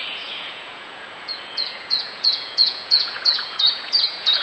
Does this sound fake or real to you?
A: fake